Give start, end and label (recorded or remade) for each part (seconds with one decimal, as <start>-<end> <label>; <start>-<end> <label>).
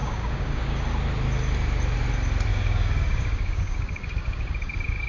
0.0-0.8 remade; 0.8-2.5 recorded; 2.5-5.1 remade